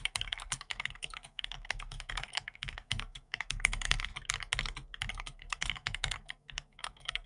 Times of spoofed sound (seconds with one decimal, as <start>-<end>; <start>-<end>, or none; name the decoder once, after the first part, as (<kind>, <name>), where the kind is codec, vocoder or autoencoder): 0.0-4.1 (codec, SNAC); 5.1-7.3